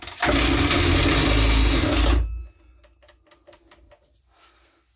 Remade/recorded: recorded